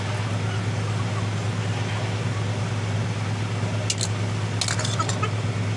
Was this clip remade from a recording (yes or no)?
no